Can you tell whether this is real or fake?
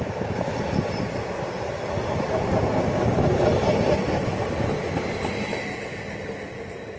real